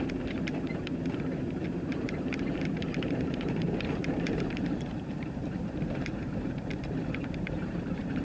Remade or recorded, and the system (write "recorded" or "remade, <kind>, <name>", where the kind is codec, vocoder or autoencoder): remade, vocoder, BigVGAN v2